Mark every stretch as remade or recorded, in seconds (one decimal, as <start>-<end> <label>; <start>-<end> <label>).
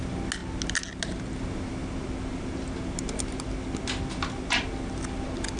0.0-5.6 recorded